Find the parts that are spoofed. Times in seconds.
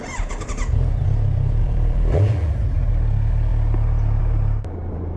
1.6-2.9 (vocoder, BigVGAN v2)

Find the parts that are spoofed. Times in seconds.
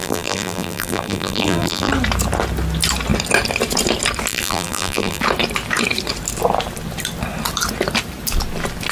0.0-1.9 (vocoder, BigVGAN v2); 4.3-5.2